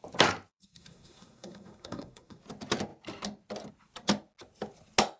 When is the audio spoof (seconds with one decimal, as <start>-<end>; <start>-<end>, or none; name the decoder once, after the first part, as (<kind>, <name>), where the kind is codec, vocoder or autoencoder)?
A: 0.5-2.4 (codec, SNAC)